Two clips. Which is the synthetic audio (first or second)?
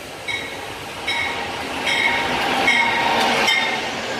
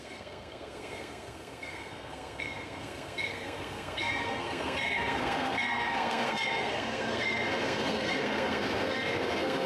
second